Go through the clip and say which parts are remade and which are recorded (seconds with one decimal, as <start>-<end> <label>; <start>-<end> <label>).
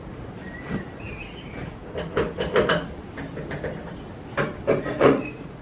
0.0-0.4 remade; 0.4-1.0 recorded; 1.0-1.8 remade; 1.8-4.8 recorded; 4.8-5.6 remade